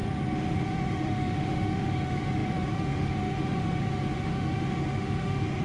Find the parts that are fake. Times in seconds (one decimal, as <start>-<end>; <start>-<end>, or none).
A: 0.0-5.6